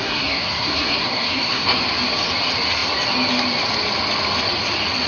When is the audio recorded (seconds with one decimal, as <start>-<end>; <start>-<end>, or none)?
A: 1.8-5.1